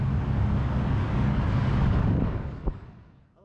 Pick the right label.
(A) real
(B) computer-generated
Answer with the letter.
B